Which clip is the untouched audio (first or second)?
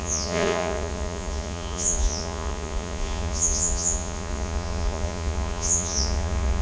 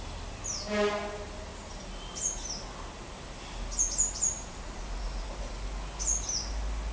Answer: second